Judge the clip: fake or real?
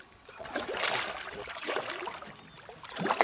real